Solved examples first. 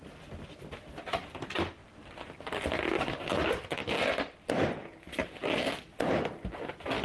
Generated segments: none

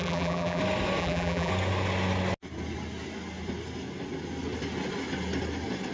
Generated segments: 0.0-0.6 (vocoder, BigVGAN v2); 1.0-1.5